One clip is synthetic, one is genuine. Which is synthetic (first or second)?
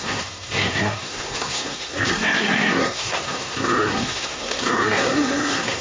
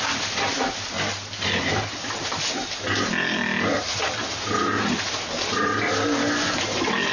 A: first